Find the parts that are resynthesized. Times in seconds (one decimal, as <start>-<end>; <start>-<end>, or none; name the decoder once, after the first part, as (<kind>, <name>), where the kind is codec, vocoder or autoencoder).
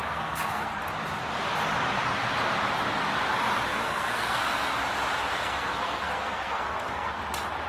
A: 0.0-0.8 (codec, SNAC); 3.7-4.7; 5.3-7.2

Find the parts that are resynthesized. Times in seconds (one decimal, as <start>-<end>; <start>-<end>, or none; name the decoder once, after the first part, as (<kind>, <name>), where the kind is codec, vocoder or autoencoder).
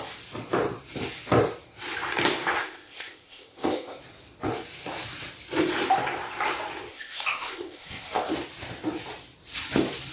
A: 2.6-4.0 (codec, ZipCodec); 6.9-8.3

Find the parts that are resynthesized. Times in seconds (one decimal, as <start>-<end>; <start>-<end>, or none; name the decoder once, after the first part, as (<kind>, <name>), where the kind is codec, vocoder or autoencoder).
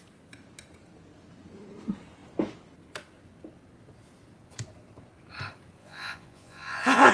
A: 5.8-7.1 (vocoder, Vocos)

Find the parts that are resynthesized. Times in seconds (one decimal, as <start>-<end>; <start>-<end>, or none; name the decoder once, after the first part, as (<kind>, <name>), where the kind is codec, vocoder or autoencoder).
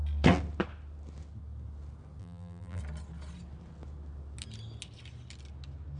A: 2.2-2.8 (vocoder, BigVGAN v2)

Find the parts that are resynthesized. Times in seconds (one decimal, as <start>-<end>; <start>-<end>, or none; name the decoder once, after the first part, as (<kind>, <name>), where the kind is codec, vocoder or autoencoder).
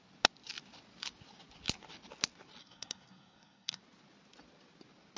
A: 2.6-3.8 (codec, SNAC)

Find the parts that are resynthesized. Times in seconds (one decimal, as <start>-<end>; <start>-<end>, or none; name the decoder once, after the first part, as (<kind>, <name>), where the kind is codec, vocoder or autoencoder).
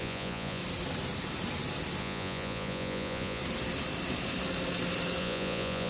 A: 0.0-0.6 (vocoder, Vocos); 2.0-3.4; 5.2-5.9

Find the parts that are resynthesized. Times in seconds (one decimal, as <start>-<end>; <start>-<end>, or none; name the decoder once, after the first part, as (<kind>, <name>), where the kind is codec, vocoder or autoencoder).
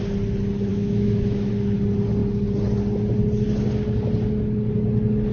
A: 0.7-1.5 (autoencoder, DAC-VAE)